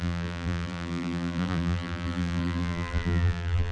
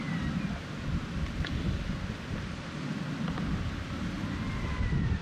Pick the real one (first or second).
second